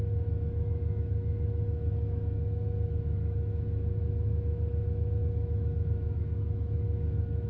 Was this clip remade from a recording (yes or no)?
yes